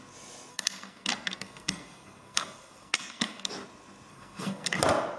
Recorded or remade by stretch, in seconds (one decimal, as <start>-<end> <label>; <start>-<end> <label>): 0.0-0.5 recorded; 0.5-3.5 remade; 3.5-4.1 recorded; 4.1-4.8 remade; 4.8-5.2 recorded